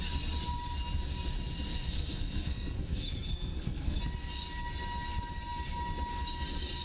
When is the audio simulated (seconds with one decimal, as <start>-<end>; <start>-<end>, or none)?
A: 1.7-4.0